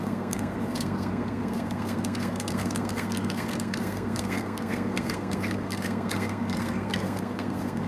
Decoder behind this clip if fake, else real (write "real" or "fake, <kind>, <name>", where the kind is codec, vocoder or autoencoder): fake, codec, SNAC